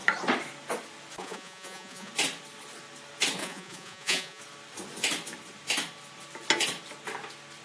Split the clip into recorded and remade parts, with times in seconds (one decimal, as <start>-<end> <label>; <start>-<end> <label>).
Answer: 0.0-1.2 recorded; 1.2-2.1 remade; 2.1-3.4 recorded; 3.4-4.4 remade; 4.4-7.6 recorded